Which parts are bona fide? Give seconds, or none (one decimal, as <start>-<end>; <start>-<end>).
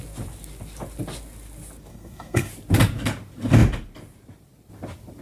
0.0-1.9; 2.5-5.2